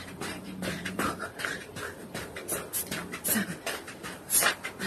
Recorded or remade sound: remade